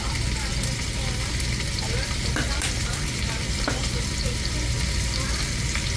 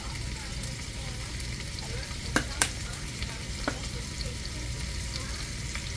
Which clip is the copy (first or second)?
second